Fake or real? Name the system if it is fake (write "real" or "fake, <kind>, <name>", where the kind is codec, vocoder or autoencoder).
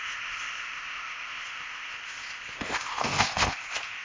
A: fake, codec, ZipCodec